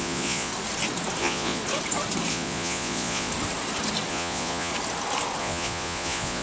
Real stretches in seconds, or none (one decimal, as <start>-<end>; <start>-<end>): 0.5-1.2; 1.6-2.3; 3.3-4.1; 4.7-5.4